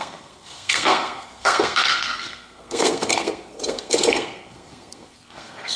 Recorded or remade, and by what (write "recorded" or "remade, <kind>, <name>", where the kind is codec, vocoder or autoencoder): remade, codec, SNAC